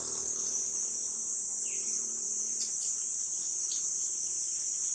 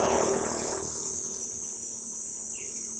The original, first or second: first